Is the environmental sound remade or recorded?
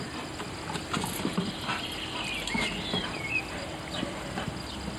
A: recorded